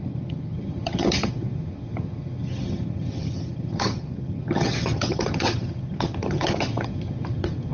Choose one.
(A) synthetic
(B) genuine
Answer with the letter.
A